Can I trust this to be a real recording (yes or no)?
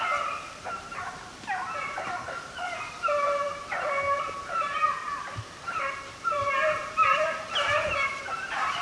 no